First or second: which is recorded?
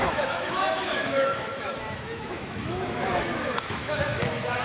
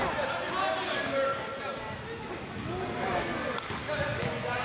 second